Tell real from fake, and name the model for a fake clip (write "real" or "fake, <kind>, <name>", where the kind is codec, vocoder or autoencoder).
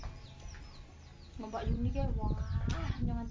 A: real